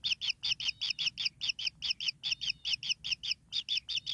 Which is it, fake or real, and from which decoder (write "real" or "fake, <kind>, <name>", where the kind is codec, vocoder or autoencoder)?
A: real